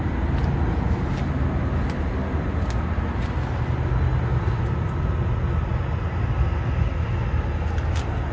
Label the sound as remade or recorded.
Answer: recorded